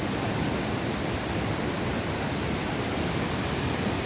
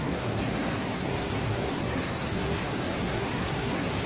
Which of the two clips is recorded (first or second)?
first